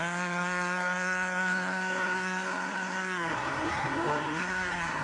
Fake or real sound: fake